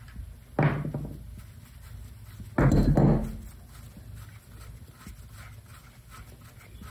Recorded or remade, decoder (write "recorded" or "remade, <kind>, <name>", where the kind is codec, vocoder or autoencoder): recorded